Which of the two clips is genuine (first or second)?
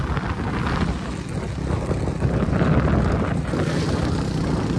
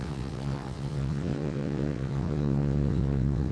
first